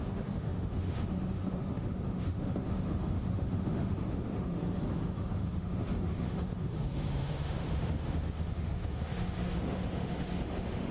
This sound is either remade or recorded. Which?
remade